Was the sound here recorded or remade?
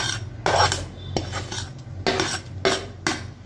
recorded